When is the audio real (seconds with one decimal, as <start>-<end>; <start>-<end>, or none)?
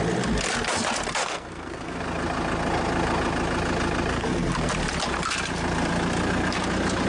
0.0-1.2; 2.0-4.1; 4.7-7.1